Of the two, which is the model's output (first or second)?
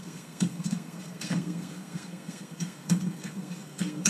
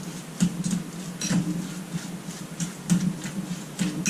first